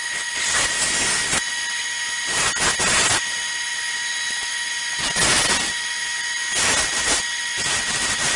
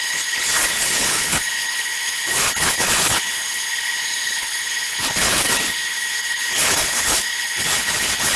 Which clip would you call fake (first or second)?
second